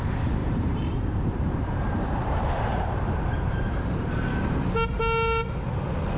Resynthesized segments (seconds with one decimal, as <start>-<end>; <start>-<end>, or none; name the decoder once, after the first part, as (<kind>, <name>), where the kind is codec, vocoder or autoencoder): 0.4-4.1 (vocoder, BigVGAN v2)